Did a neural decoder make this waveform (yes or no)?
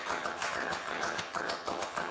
yes